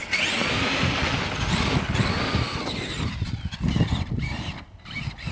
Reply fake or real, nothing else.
real